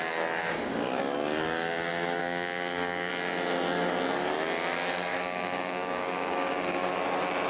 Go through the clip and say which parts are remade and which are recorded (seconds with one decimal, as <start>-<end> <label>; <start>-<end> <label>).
0.0-0.4 recorded; 0.4-1.0 remade; 1.0-2.2 recorded; 2.2-3.1 remade; 3.1-5.1 recorded; 5.1-6.9 remade; 6.9-7.5 recorded